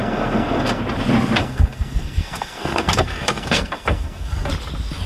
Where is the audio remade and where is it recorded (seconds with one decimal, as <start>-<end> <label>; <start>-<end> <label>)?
0.0-0.8 remade; 0.8-1.4 recorded; 1.4-4.5 remade; 4.5-5.1 recorded